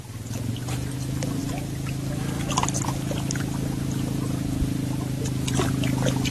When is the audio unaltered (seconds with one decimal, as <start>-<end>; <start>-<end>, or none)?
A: 0.0-6.3